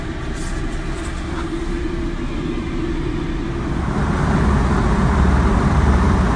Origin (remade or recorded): remade